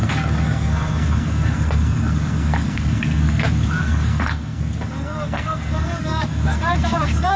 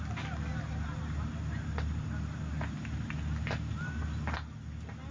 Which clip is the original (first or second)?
second